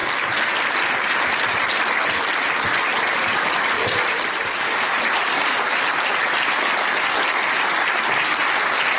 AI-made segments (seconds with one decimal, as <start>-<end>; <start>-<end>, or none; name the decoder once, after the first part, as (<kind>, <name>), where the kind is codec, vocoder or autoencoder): none